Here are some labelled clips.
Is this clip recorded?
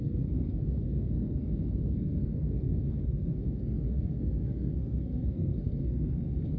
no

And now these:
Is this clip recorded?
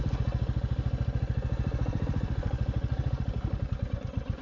yes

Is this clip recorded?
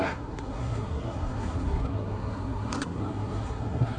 no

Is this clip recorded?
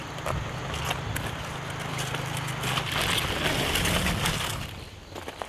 yes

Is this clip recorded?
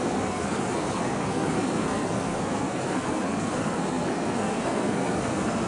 no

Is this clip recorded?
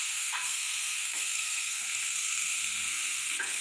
no